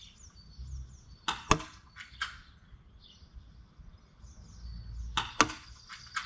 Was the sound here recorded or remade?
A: recorded